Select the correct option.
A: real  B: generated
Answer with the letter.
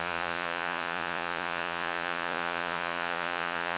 B